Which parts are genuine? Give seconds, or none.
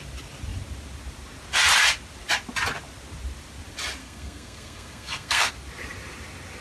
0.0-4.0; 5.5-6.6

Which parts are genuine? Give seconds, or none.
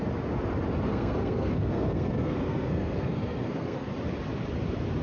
0.0-0.9; 3.9-5.0